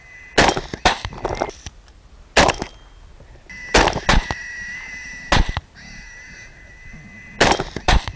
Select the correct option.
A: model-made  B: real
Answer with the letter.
B